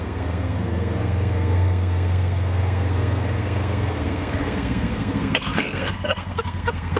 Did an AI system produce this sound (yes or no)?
yes